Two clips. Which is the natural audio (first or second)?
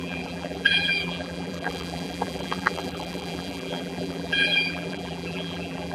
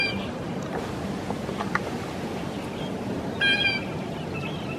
second